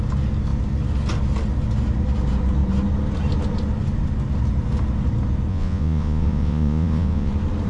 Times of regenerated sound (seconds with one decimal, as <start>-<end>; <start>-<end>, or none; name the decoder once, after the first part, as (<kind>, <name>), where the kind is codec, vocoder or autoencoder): 5.5-7.3 (vocoder, Vocos)